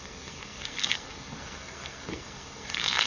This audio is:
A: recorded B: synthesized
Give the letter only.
B